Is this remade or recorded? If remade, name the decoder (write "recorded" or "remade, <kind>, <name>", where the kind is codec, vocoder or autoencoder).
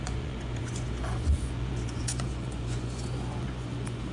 remade, vocoder, Vocos